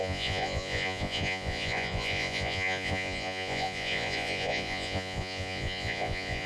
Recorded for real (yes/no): no